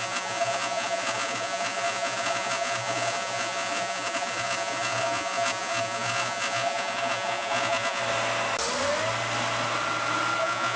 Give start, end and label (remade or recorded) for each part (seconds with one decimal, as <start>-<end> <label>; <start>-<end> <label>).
0.0-8.0 remade; 8.0-10.4 recorded; 10.4-10.8 remade